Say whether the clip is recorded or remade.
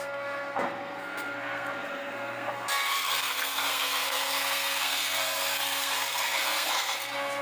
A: remade